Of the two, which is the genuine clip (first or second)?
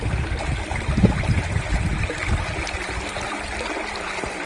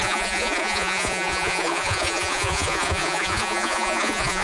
first